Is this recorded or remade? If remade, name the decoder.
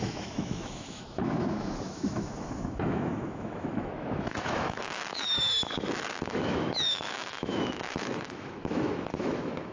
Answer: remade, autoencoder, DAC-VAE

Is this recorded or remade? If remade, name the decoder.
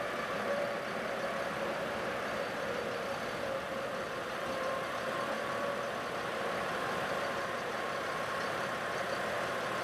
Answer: remade, vocoder, BigVGAN v2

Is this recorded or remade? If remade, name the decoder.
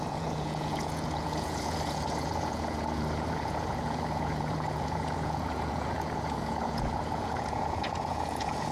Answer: remade, vocoder, Vocos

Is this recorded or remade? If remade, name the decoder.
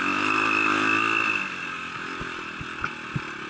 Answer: recorded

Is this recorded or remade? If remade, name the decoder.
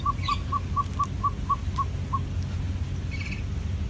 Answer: recorded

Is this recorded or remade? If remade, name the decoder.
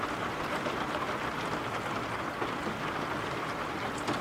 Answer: recorded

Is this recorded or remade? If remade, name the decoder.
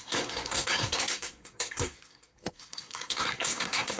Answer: remade, codec, SNAC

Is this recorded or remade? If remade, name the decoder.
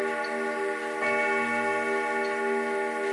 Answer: recorded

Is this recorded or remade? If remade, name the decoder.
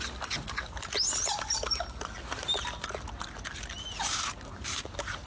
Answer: recorded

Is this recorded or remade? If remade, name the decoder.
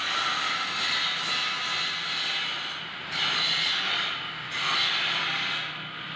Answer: recorded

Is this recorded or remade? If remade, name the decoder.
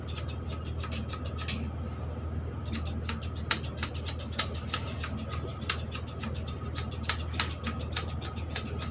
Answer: recorded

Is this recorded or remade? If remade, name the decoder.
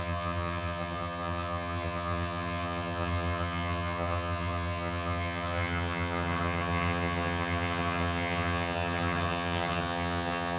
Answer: remade, vocoder, HiFi-GAN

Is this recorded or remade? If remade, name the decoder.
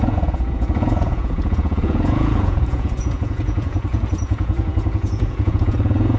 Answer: remade, vocoder, Vocos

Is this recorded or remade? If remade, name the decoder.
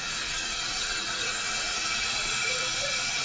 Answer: remade, vocoder, Vocos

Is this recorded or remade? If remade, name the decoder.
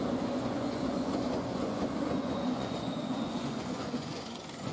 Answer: remade, vocoder, Vocos